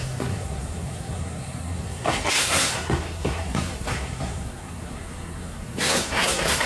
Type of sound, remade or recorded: remade